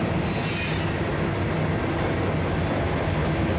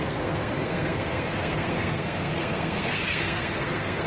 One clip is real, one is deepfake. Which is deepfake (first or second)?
second